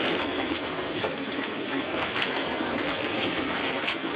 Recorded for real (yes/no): no